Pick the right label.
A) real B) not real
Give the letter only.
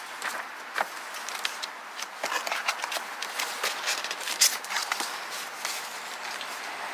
A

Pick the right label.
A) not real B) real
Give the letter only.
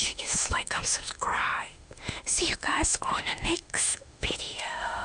A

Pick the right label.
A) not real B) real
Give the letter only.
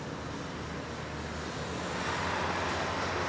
B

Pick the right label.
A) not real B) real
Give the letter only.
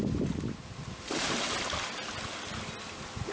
B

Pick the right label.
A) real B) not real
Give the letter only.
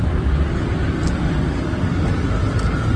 A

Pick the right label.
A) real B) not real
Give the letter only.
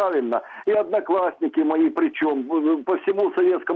A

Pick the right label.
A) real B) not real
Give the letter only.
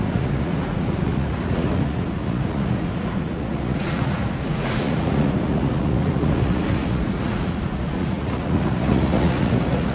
B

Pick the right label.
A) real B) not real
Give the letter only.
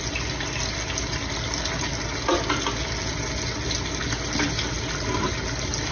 A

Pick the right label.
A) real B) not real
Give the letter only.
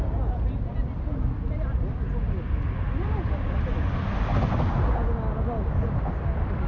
A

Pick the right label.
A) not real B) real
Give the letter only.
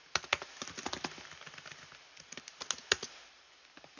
B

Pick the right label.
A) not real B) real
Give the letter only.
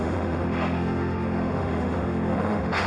A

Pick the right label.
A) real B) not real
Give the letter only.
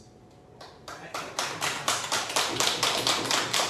B